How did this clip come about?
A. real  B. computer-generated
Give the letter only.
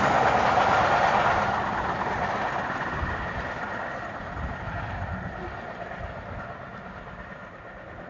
A